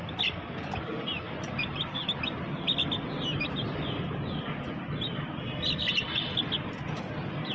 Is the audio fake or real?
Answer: real